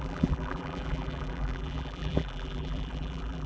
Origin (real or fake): fake